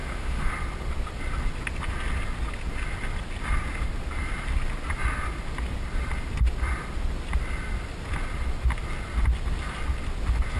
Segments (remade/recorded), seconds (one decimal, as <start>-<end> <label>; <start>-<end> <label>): 0.0-0.5 remade; 0.5-10.6 recorded